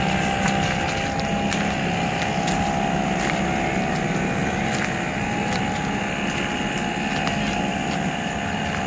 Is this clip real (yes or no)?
yes